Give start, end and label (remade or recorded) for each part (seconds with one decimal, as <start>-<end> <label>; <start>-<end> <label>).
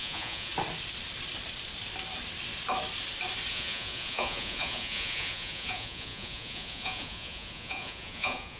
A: 0.0-0.5 remade; 0.5-3.5 recorded; 3.5-8.6 remade